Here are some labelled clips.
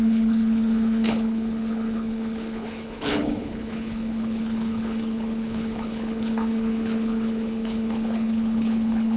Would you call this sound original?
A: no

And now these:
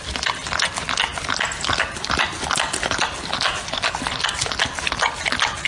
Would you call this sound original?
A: yes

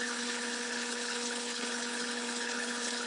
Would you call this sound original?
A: no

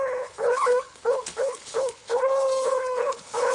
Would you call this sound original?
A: no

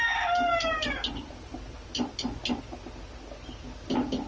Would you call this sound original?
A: yes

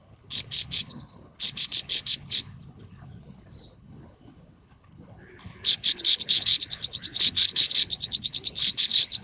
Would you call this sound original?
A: no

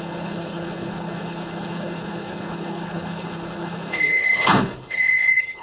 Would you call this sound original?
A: no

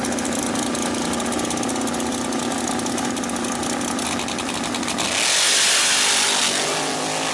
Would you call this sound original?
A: yes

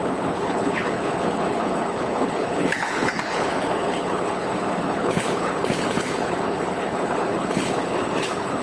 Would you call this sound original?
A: no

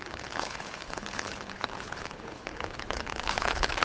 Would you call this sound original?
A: no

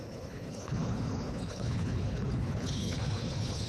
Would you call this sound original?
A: no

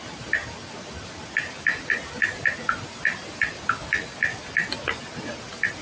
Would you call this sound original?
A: yes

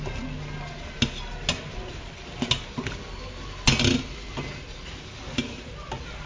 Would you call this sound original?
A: yes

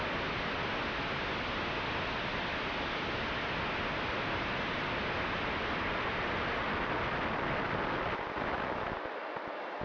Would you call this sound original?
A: yes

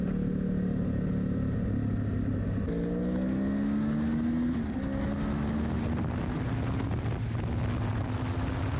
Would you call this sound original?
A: yes